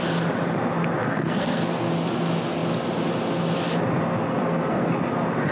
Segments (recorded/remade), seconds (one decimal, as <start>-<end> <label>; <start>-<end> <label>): 0.0-1.0 recorded; 1.0-1.9 remade; 1.9-4.3 recorded; 4.3-4.9 remade; 4.9-5.5 recorded